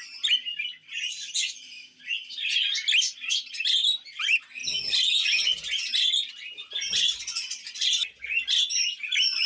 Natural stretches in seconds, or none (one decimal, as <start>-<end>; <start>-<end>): 0.0-9.5